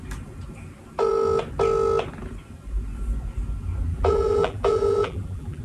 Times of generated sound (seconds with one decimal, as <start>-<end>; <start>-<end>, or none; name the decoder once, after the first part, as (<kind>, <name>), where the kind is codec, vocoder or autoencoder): 3.9-5.6 (vocoder, BigVGAN v2)